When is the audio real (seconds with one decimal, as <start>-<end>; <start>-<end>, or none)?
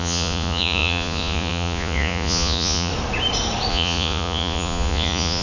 2.9-3.7